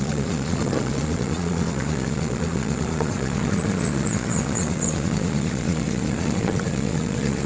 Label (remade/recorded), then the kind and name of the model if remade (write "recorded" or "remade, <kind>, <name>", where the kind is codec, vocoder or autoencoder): remade, vocoder, Vocos